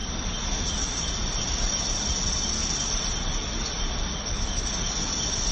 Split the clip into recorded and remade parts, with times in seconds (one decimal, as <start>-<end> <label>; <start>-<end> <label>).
0.0-5.5 recorded